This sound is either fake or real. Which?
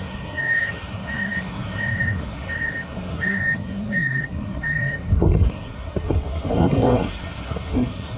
fake